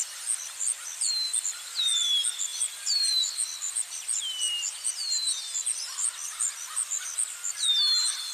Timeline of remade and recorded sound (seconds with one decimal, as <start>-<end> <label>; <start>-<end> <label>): 0.0-5.0 recorded; 5.0-5.5 remade; 5.5-8.3 recorded